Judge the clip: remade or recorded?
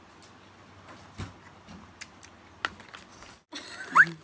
recorded